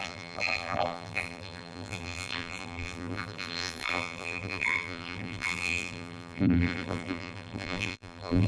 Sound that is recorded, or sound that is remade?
remade